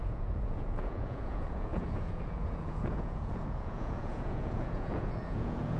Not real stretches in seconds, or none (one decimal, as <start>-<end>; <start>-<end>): 0.0-5.8